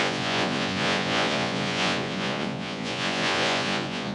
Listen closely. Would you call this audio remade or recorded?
remade